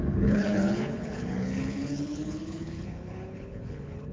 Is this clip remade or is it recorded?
remade